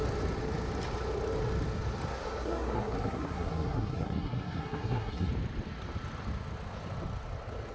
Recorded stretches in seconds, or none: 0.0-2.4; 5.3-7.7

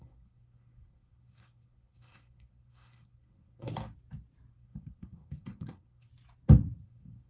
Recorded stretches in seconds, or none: 3.7-4.5; 6.1-6.8

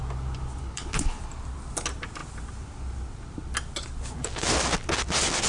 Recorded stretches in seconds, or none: 0.0-0.6; 1.2-5.5

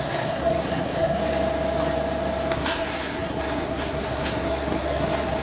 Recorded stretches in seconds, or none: 1.2-2.5

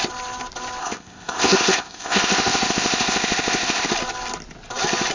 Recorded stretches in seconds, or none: 0.0-0.8; 3.9-5.1

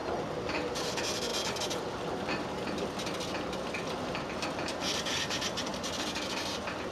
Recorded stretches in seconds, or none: 0.0-0.7

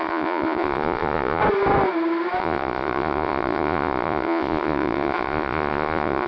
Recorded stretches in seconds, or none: 1.4-2.4